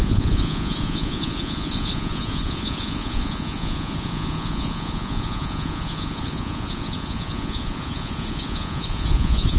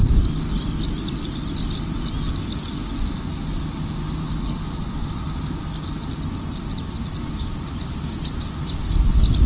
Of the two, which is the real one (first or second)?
second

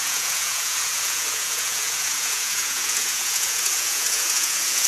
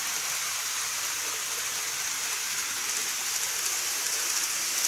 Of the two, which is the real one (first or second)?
second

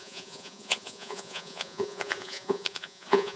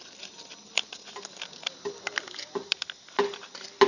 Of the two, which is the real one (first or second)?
second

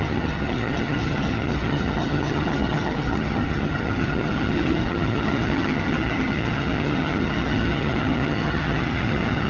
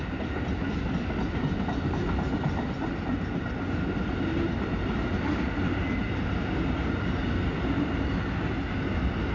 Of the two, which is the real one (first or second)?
second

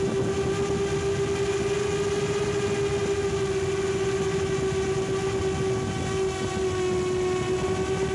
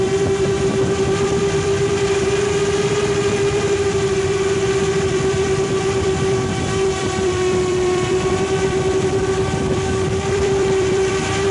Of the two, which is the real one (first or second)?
first